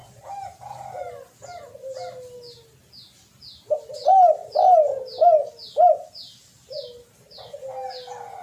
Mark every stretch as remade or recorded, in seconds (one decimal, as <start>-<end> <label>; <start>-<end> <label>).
0.0-8.4 recorded